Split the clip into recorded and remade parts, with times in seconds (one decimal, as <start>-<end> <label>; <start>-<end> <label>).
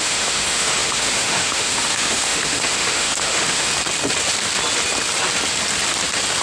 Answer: 0.0-3.7 remade; 3.7-6.4 recorded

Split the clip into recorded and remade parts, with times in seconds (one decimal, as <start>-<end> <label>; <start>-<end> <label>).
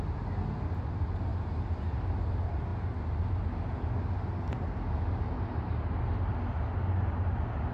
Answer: 0.0-7.7 recorded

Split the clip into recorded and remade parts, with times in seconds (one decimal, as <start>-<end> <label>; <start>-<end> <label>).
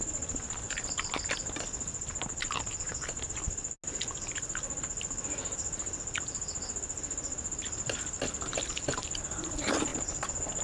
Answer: 0.0-10.6 recorded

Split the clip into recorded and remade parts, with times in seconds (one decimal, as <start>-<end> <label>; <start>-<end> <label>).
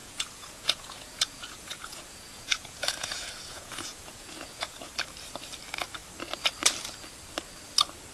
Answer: 0.0-4.9 remade; 4.9-8.1 recorded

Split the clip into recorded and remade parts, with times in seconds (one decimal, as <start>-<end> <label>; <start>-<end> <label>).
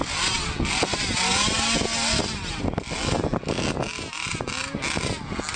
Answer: 0.0-5.6 recorded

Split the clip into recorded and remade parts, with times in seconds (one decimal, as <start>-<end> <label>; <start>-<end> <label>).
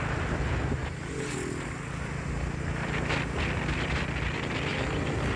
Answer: 0.0-5.4 recorded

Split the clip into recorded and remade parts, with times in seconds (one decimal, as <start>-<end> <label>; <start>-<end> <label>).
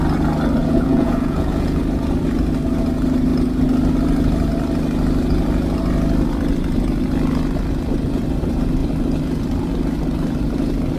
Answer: 0.0-0.6 recorded; 0.6-1.8 remade; 1.8-11.0 recorded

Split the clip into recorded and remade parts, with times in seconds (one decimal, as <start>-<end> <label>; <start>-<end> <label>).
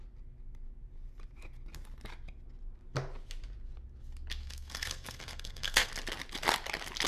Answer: 0.0-4.4 recorded; 4.4-5.9 remade; 5.9-7.1 recorded